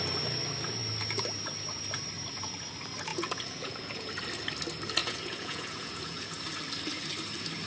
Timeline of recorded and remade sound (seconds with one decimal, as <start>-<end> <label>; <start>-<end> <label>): 0.0-3.1 recorded; 3.1-4.1 remade; 4.1-5.0 recorded; 5.0-6.4 remade; 6.4-7.7 recorded